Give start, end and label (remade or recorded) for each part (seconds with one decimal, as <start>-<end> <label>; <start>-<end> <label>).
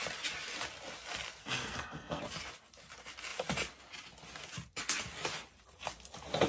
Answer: 0.0-1.4 recorded; 1.4-2.2 remade; 2.2-6.5 recorded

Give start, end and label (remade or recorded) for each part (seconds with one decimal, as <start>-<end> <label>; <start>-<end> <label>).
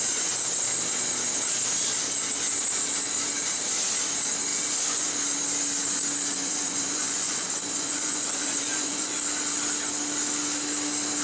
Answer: 0.0-4.5 recorded; 4.5-5.1 remade; 5.1-6.3 recorded; 6.3-9.2 remade; 9.2-11.2 recorded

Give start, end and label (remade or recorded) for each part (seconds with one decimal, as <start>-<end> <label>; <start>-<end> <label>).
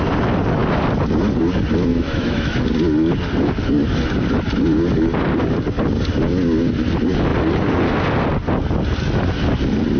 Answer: 0.0-1.9 recorded; 1.9-2.6 remade; 2.6-10.0 recorded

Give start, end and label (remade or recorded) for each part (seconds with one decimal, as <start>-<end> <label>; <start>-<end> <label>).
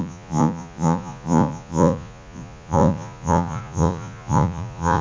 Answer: 0.0-5.0 remade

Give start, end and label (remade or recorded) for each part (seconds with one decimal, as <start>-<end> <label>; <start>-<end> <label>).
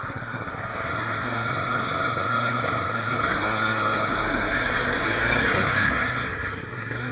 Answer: 0.0-7.1 remade